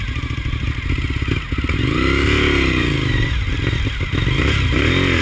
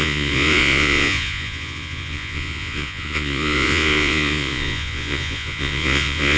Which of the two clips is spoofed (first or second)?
second